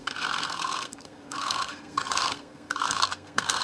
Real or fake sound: fake